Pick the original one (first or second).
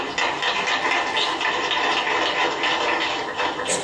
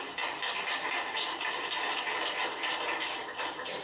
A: first